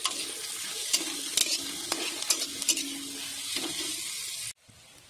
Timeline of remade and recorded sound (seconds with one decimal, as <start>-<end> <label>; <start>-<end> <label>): 0.0-5.1 recorded